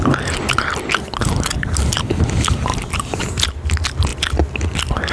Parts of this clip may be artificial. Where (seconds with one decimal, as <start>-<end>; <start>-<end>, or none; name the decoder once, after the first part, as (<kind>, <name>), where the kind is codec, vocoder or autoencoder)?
none